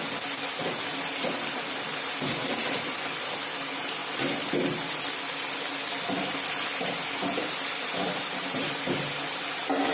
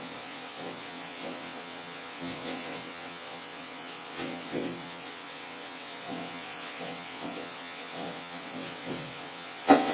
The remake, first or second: second